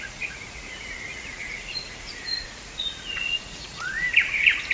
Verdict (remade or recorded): remade